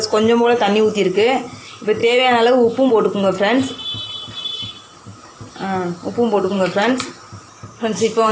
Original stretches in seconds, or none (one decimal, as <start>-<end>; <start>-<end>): 0.0-6.4